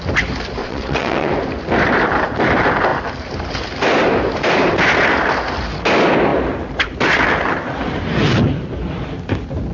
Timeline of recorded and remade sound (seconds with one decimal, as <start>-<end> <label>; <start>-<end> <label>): 0.0-0.6 recorded; 0.6-1.3 remade; 1.3-9.7 recorded